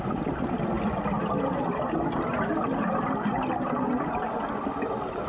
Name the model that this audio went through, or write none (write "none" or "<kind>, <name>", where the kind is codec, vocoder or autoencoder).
none